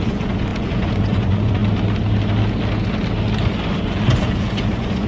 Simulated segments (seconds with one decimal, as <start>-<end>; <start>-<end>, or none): 0.0-1.6; 3.8-5.1